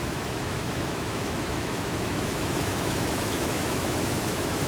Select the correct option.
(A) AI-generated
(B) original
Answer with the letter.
A